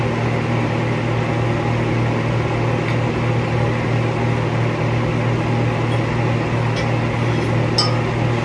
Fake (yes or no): no